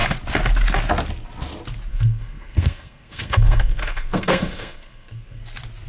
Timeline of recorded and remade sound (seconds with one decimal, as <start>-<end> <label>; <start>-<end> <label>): 0.0-1.9 recorded; 1.9-5.4 remade; 5.4-5.9 recorded